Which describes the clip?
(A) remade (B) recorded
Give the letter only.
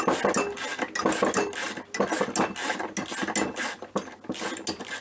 B